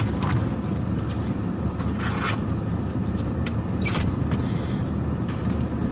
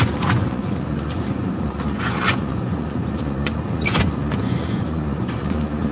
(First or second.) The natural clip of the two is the first